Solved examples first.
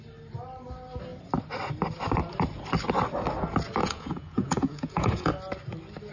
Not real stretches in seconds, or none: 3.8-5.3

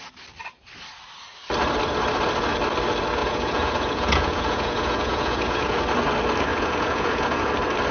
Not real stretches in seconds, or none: 3.2-5.8; 6.5-7.5